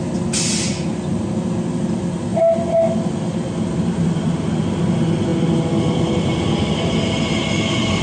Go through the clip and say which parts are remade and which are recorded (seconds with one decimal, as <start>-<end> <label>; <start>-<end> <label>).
0.0-8.0 recorded